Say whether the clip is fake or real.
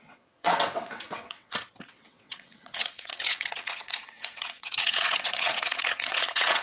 fake